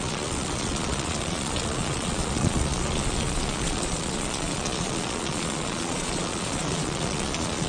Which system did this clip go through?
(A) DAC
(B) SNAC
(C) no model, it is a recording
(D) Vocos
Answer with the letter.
D